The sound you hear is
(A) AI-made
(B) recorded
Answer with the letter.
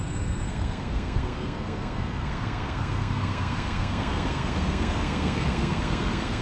A